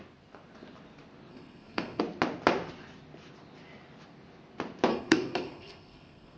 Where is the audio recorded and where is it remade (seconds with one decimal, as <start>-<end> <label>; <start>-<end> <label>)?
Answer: 0.0-1.3 recorded; 1.3-2.0 remade; 2.0-4.9 recorded; 4.9-6.4 remade